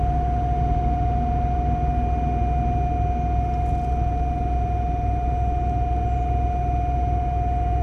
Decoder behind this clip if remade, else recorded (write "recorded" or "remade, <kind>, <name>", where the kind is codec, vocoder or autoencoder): recorded